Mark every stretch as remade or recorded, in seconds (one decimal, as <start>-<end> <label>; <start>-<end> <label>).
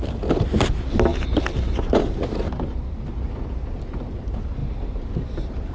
0.0-5.7 recorded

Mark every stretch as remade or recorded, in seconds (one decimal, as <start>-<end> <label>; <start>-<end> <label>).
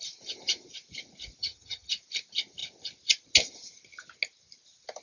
0.0-1.4 recorded; 1.4-1.9 remade; 1.9-5.0 recorded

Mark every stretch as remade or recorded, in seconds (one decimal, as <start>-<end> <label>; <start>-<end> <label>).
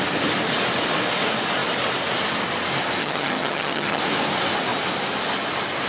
0.0-3.0 recorded; 3.0-4.0 remade; 4.0-5.9 recorded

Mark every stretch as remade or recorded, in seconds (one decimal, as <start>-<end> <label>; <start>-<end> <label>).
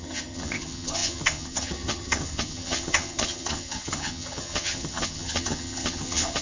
0.0-6.4 remade